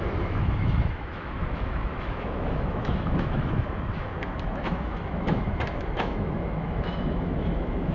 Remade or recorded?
remade